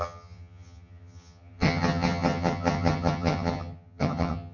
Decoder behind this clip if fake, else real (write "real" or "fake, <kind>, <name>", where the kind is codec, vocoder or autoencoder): fake, vocoder, HiFi-GAN